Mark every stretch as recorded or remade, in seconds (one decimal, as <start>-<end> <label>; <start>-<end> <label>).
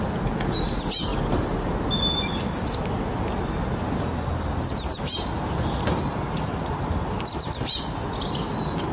0.0-4.9 recorded; 4.9-7.2 remade; 7.2-8.9 recorded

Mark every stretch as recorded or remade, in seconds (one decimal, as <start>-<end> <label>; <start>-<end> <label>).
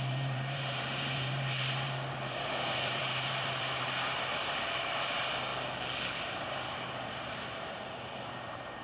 0.0-5.5 remade; 5.5-6.2 recorded; 6.2-8.8 remade